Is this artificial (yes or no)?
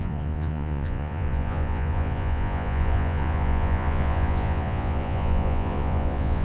yes